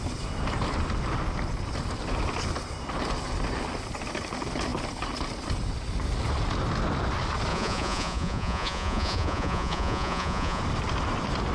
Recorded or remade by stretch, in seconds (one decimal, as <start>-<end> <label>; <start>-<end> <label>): 0.0-7.5 recorded; 7.5-10.6 remade; 10.6-11.5 recorded